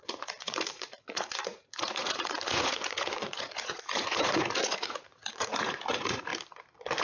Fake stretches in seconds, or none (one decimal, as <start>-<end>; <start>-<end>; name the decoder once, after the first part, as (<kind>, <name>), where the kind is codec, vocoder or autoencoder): 0.0-6.3 (vocoder, Vocos)